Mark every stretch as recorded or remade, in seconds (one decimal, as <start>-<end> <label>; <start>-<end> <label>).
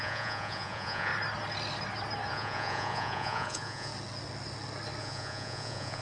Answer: 0.0-1.1 remade; 1.1-2.3 recorded; 2.3-3.9 remade; 3.9-5.0 recorded; 5.0-6.0 remade